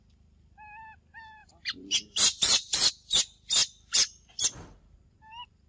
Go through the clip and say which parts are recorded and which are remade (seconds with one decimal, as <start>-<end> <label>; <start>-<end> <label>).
0.0-1.4 recorded; 1.4-2.9 remade; 2.9-3.6 recorded; 3.6-5.7 remade

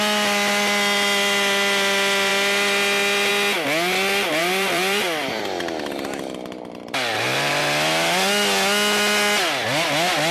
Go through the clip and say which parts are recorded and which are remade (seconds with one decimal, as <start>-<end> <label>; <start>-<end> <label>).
0.0-4.4 recorded; 4.4-7.6 remade; 7.6-10.3 recorded